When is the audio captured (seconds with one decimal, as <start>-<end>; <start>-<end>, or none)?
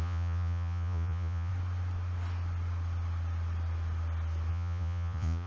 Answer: 1.5-4.5